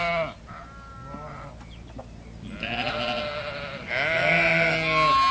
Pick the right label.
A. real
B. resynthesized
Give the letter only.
A